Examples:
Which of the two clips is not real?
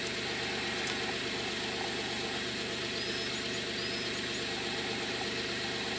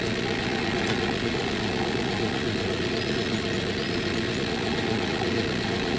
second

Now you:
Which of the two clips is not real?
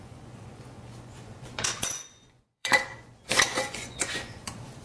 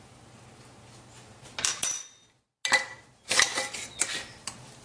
first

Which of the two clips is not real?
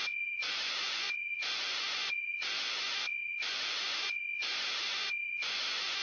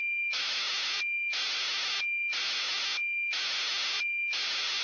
first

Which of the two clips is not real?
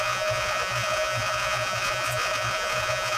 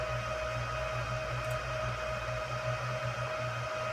first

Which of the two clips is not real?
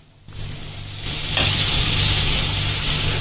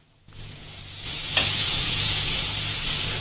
second